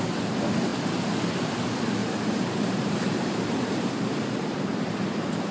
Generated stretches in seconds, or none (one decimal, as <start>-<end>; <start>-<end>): 2.0-5.5

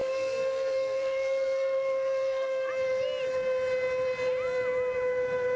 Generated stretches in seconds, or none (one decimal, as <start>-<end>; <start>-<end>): 0.0-2.7

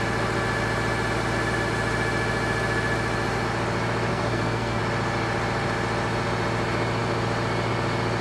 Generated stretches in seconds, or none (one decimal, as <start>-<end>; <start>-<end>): 4.1-4.8

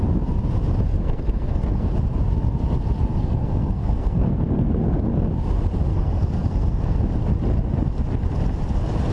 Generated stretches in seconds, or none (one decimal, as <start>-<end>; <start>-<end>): 0.9-1.9; 3.2-5.1; 5.9-7.0

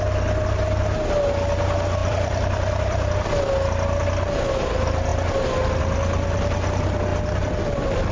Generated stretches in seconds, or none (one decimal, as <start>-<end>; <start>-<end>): 2.0-3.4; 7.1-8.1